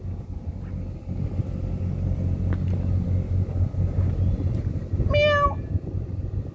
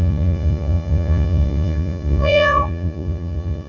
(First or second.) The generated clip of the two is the second